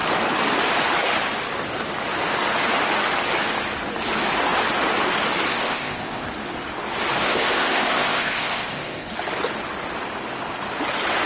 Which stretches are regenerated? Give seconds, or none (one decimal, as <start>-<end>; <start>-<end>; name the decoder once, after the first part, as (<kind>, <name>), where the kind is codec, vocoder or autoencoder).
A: 5.5-6.3 (codec, ZipCodec); 7.2-9.1